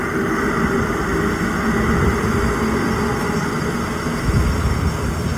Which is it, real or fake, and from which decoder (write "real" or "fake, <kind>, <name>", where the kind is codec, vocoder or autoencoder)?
real